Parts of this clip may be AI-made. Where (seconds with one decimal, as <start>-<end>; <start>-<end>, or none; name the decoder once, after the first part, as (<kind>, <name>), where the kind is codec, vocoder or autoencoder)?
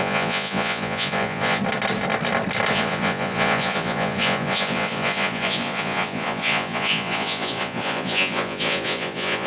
0.0-1.6 (vocoder, Vocos); 2.7-9.5